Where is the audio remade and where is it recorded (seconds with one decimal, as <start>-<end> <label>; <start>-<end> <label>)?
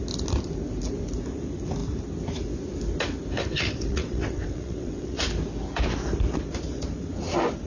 0.0-3.3 recorded; 3.3-5.2 remade; 5.2-7.7 recorded